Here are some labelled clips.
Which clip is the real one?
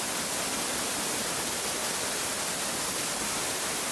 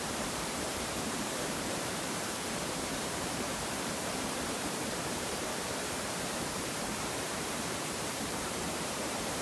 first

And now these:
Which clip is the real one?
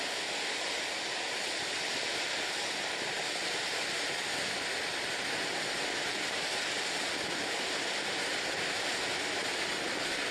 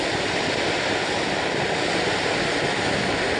first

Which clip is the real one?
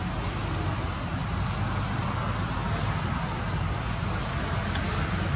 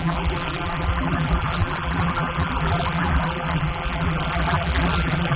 first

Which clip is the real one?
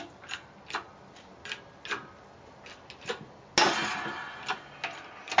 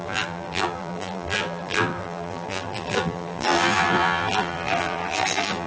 first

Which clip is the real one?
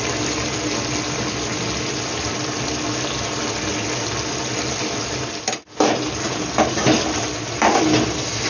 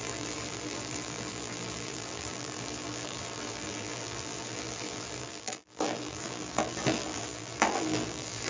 first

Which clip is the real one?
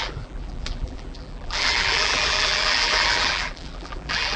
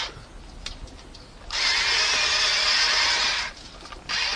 second